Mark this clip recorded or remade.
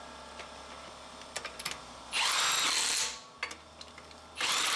recorded